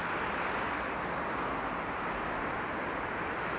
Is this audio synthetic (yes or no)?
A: no